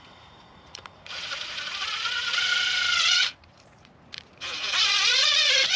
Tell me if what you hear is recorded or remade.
remade